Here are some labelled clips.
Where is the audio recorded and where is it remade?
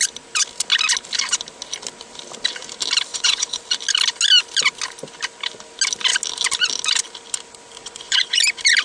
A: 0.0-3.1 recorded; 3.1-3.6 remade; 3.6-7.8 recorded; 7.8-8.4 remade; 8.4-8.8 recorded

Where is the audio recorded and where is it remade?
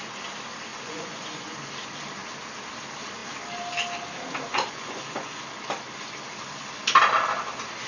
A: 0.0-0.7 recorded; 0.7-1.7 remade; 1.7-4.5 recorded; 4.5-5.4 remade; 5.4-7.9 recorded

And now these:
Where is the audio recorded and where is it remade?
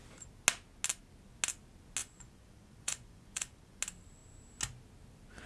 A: 0.0-2.0 recorded; 2.0-3.8 remade; 3.8-5.5 recorded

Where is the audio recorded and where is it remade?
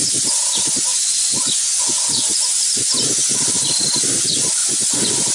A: 0.0-0.9 recorded; 0.9-3.4 remade; 3.4-4.6 recorded; 4.6-5.3 remade